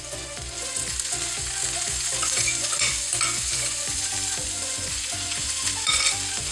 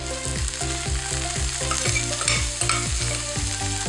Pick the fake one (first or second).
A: first